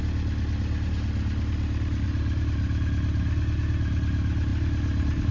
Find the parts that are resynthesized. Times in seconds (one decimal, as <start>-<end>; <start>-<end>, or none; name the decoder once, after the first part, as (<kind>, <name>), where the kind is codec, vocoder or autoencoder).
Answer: none